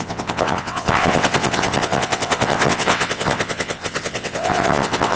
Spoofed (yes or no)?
yes